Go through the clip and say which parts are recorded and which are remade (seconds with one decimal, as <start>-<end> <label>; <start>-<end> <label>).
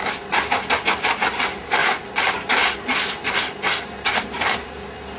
0.0-5.2 recorded